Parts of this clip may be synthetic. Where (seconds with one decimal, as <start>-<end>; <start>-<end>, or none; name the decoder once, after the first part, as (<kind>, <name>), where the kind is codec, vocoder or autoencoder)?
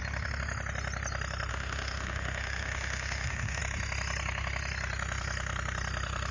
1.5-3.6 (autoencoder, DAC-VAE)